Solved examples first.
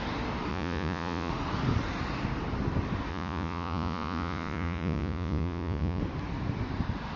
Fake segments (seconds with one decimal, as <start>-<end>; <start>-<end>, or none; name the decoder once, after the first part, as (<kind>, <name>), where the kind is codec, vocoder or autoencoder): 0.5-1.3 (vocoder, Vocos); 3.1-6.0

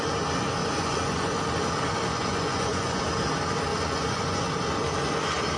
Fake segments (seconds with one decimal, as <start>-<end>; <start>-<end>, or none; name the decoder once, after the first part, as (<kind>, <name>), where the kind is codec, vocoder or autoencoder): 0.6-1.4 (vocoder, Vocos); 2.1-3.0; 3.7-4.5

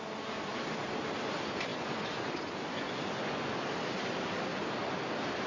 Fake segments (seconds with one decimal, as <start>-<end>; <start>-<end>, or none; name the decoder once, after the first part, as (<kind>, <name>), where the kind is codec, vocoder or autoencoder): 1.7-3.5 (vocoder, Vocos)

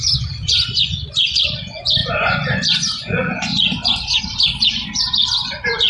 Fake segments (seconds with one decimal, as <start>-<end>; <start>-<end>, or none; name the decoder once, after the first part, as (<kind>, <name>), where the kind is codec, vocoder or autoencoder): 0.0-5.9 (vocoder, Vocos)

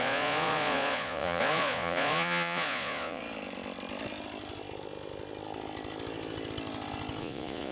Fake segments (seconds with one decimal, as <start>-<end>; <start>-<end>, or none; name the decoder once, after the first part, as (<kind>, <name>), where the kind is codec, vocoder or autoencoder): 0.0-3.2 (vocoder, Vocos); 7.2-7.7

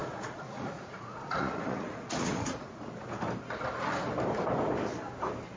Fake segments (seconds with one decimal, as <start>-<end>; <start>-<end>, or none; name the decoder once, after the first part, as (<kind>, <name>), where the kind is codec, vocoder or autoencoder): 0.0-2.9 (vocoder, Vocos)